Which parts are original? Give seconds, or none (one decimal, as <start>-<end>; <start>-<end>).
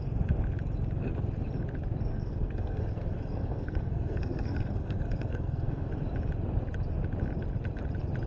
0.0-2.1; 5.9-8.3